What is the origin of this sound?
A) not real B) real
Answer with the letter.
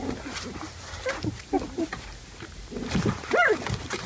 B